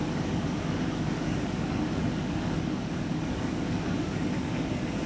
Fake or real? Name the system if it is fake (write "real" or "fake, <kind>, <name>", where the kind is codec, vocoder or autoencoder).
fake, codec, DAC